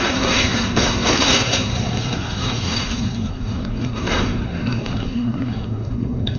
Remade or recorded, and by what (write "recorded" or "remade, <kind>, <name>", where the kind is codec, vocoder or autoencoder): remade, codec, SNAC